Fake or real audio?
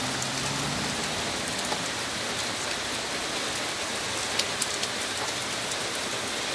real